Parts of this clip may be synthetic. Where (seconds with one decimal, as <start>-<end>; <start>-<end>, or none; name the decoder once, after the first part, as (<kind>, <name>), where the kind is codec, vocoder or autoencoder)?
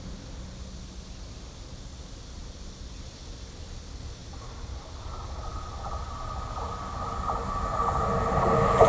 none